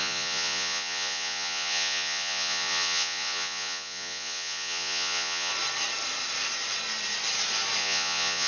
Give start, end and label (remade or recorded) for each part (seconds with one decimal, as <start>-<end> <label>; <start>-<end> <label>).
0.0-5.5 remade; 5.5-7.8 recorded; 7.8-8.5 remade